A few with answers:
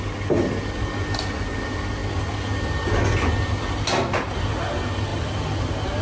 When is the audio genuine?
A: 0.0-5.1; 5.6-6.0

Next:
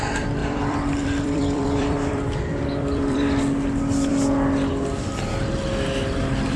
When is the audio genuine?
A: 0.0-0.4; 3.4-6.6

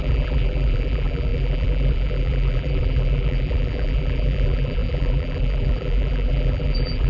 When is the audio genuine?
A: none

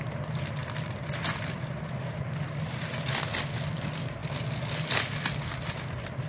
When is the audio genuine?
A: none

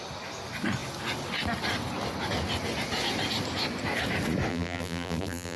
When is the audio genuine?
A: 0.0-4.5

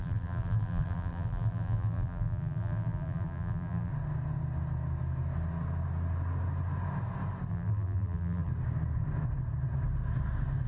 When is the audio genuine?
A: 3.9-7.5; 8.5-10.7

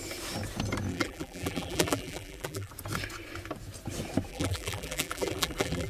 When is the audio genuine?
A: 0.0-0.9; 2.7-4.3

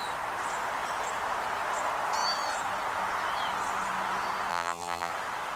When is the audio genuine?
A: 0.0-4.5; 5.1-5.6